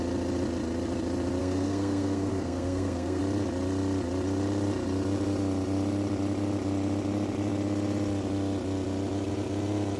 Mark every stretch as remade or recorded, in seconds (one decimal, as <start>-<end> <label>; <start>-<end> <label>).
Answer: 0.0-1.4 recorded; 1.4-3.2 remade; 3.2-10.0 recorded